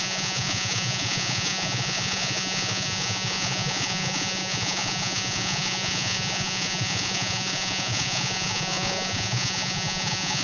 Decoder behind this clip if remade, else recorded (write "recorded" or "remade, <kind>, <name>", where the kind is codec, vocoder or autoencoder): remade, vocoder, Vocos